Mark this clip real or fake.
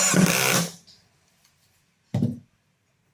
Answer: real